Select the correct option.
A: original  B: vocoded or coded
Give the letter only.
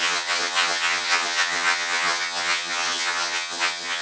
B